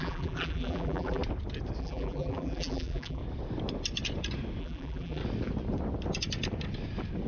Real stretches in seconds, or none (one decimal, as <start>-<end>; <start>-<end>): 1.2-1.8; 3.2-4.6; 5.2-7.3